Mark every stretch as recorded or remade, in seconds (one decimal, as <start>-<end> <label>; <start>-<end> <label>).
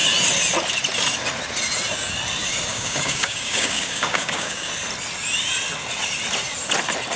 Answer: 0.0-2.7 recorded; 2.7-4.7 remade; 4.7-7.2 recorded